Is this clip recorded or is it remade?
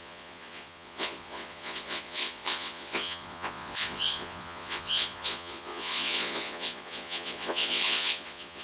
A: remade